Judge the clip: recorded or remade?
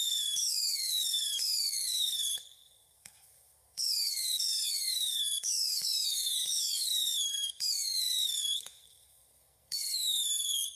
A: remade